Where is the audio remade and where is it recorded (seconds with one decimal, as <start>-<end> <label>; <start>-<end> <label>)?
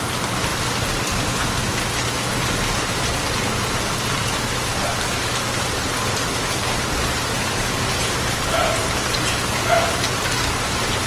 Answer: 0.0-11.1 recorded